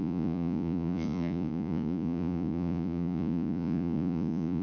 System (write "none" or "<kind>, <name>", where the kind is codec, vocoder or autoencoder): vocoder, Vocos